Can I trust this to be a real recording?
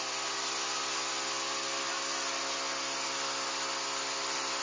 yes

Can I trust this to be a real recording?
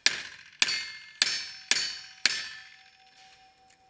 yes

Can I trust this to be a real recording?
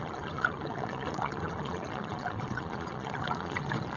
no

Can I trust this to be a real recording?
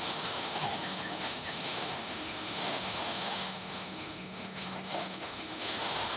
no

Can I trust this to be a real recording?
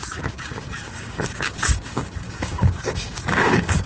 no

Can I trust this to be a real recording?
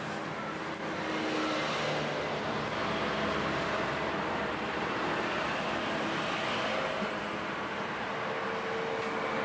yes